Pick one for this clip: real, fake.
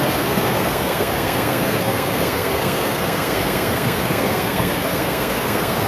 fake